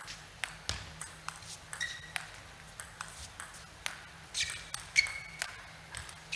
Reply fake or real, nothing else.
real